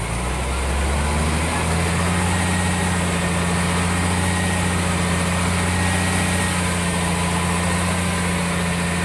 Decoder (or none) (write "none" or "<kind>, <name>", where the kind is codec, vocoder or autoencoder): none